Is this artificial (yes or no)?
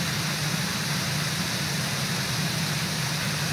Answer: no